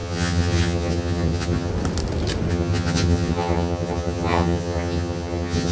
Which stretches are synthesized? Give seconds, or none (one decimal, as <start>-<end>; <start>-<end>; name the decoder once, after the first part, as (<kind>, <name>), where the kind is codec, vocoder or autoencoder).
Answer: 0.0-1.7 (vocoder, HiFi-GAN); 2.5-5.7